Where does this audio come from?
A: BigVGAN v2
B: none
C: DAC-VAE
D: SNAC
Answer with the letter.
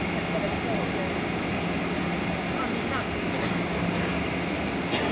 B